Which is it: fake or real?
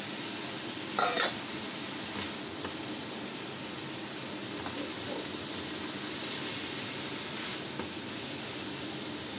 real